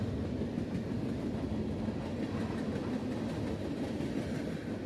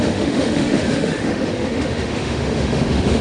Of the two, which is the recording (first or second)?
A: first